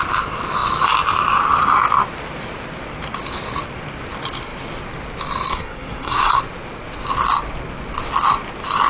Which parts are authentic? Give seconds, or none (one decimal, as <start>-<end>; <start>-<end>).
0.0-5.5; 6.4-8.9